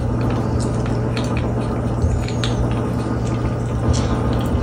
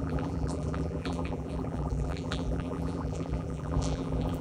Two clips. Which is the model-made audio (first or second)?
second